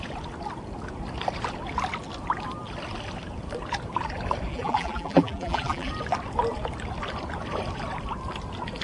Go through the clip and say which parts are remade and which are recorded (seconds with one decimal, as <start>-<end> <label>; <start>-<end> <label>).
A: 0.0-4.5 recorded; 4.5-5.9 remade; 5.9-8.8 recorded